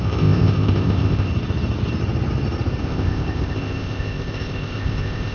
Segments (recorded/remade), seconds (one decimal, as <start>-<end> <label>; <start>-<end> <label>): 0.0-1.3 remade; 1.3-2.8 recorded; 2.8-5.3 remade